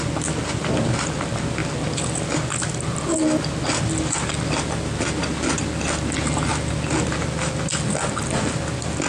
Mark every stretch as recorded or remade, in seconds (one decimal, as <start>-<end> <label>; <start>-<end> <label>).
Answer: 0.0-9.1 recorded